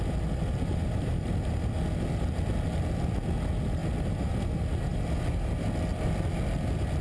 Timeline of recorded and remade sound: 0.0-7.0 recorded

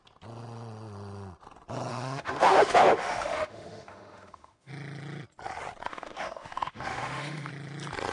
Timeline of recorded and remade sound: 0.0-1.9 recorded; 1.9-4.7 remade; 4.7-5.9 recorded; 5.9-7.5 remade; 7.5-8.1 recorded

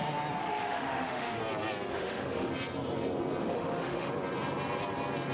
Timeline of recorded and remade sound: 0.0-0.4 recorded; 0.4-1.4 remade; 1.4-1.9 recorded; 1.9-2.5 remade; 2.5-3.4 recorded; 3.4-4.1 remade; 4.1-5.3 recorded

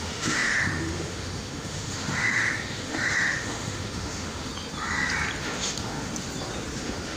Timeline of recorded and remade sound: 0.0-4.5 remade; 4.5-5.4 recorded; 5.4-6.1 remade; 6.1-6.8 recorded; 6.8-7.2 remade

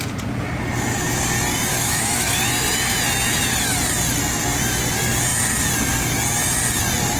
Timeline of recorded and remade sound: 0.0-1.7 recorded; 1.7-2.4 remade; 2.4-7.2 recorded

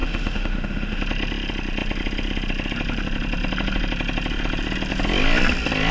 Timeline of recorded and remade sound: 0.0-1.0 remade; 1.0-5.9 recorded

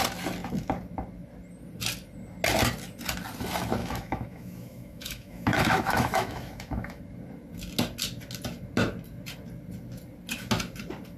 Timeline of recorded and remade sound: 0.0-3.8 recorded; 3.8-7.0 remade; 7.0-11.2 recorded

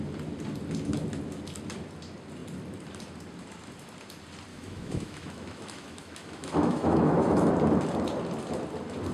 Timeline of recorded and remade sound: 0.0-4.5 recorded; 4.5-7.5 remade; 7.5-9.1 recorded